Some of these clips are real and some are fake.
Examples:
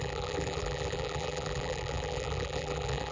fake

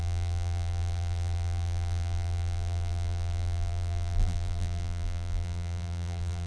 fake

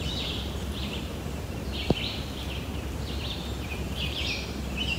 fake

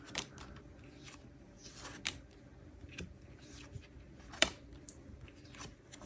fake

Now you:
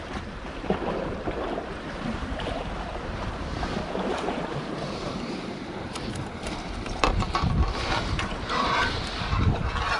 fake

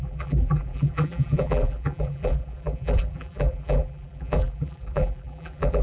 fake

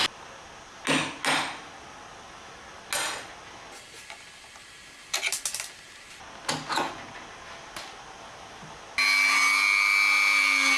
real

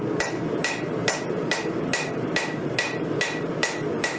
fake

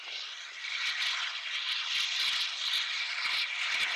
real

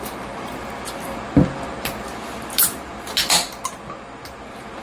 real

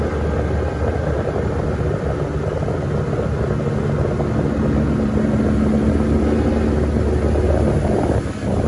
real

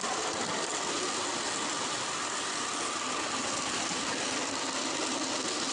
real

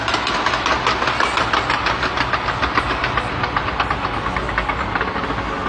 real